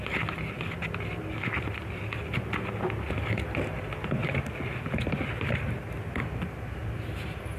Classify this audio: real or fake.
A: real